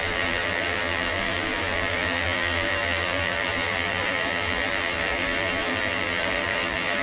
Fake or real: fake